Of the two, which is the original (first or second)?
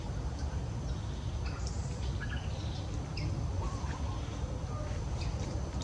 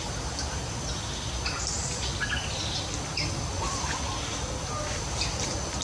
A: second